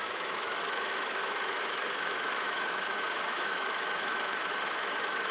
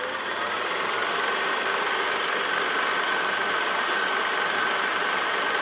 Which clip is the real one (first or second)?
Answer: second